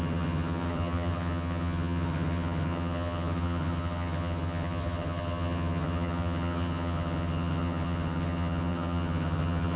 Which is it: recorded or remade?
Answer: remade